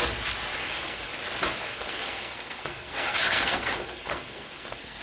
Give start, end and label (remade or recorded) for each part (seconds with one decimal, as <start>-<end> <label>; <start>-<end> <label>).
0.0-0.6 recorded; 0.6-1.1 remade; 1.1-1.7 recorded; 1.7-5.0 remade